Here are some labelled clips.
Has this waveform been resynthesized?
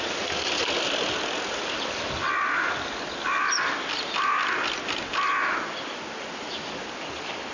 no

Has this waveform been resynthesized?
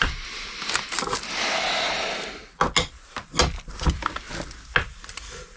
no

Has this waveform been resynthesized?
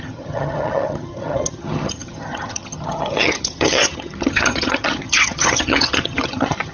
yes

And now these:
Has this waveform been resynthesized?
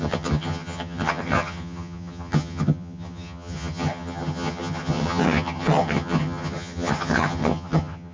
yes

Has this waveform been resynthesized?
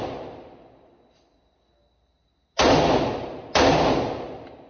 no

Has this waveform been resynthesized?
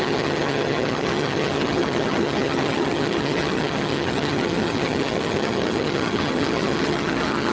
yes